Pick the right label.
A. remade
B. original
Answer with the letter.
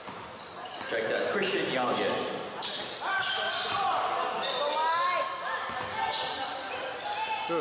B